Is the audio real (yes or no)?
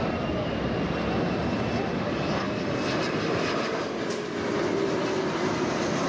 yes